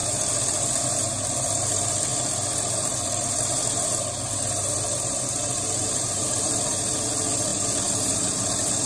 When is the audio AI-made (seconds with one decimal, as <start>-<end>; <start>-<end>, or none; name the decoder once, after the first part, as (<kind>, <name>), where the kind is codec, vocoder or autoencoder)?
none